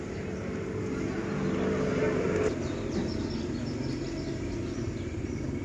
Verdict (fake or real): real